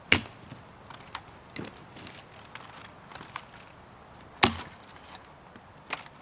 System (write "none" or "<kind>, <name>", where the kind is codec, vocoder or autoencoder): none